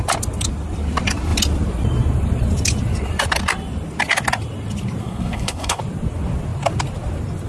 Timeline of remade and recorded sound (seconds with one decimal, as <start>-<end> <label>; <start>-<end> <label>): 0.0-5.0 recorded; 5.0-5.8 remade; 5.8-7.5 recorded